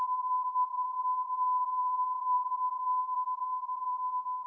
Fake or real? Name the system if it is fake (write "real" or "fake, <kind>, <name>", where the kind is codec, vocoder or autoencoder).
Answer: fake, vocoder, Vocos